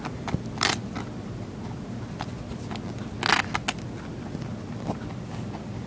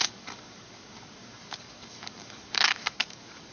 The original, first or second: first